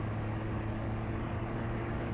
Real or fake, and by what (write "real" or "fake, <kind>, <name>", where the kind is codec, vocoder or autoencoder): fake, codec, DAC